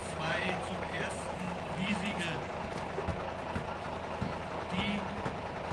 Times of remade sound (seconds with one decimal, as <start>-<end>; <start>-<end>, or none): 0.0-2.2